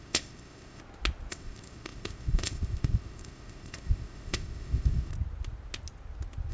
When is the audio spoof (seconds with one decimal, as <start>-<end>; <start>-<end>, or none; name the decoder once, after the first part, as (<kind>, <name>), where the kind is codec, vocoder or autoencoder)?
0.0-0.8 (codec, ZipCodec); 1.3-5.1